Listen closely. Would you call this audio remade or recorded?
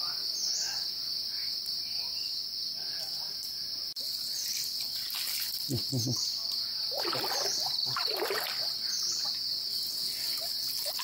recorded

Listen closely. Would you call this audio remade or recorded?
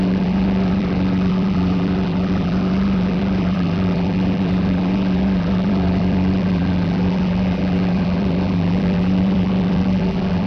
remade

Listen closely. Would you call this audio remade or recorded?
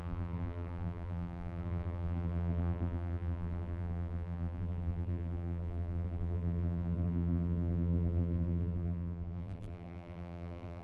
remade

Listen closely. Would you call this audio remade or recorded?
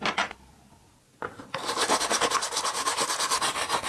recorded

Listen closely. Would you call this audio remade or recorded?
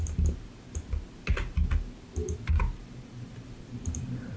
remade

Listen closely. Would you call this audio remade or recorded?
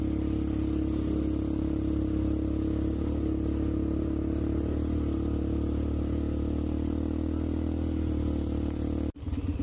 recorded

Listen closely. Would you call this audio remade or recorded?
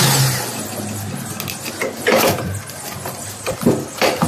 recorded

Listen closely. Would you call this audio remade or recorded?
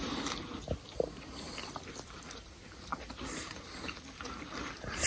recorded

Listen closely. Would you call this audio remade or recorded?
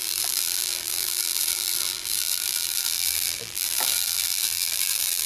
remade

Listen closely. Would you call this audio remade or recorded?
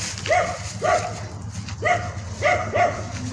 recorded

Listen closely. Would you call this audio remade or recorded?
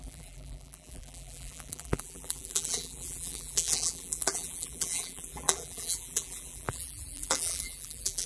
remade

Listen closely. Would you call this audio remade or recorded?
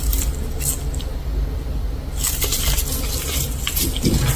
recorded